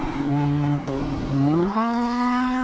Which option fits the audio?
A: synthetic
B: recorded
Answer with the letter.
A